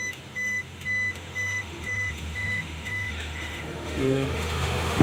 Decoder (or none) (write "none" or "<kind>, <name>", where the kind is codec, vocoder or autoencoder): autoencoder, DAC-VAE